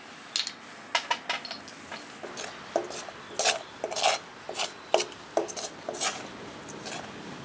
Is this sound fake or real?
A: real